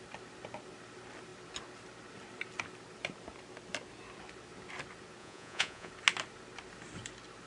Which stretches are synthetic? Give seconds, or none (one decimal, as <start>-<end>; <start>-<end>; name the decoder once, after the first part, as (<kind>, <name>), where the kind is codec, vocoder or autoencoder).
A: 5.2-5.9 (vocoder, Vocos)